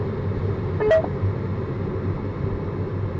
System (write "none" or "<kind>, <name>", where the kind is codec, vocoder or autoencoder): none